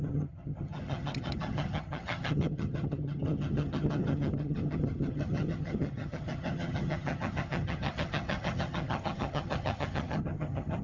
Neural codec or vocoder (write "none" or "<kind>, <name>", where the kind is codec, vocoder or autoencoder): vocoder, HiFi-GAN